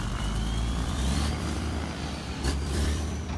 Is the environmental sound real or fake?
fake